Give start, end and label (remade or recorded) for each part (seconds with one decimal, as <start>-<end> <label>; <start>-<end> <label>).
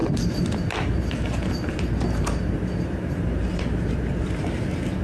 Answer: 0.0-5.0 remade